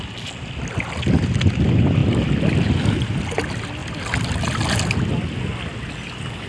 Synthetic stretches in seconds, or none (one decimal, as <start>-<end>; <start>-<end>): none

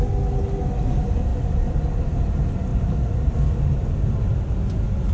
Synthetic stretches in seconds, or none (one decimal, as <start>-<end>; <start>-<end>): 1.3-1.8; 2.7-4.4

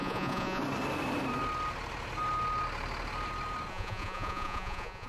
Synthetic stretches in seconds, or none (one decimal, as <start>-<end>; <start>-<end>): 0.0-0.6; 3.7-5.1

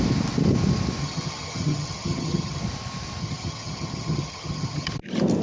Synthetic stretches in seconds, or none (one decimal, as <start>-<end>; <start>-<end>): 1.0-2.6; 3.2-4.9

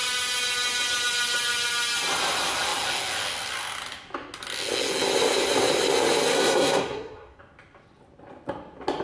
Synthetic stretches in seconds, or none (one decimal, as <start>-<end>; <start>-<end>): 6.3-7.4

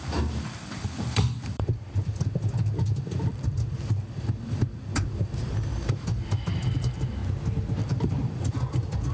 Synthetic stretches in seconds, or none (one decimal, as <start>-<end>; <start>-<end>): 0.0-7.2; 7.8-9.1